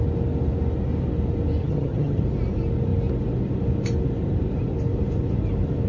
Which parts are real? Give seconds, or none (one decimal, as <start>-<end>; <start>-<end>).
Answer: 0.0-1.6; 2.2-5.9